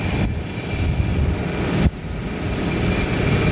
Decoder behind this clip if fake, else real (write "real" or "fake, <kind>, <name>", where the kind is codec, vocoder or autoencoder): fake, vocoder, BigVGAN v2